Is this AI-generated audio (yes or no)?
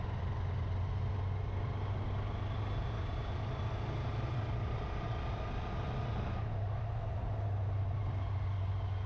no